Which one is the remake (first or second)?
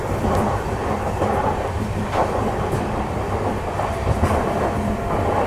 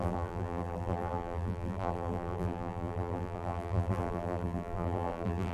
second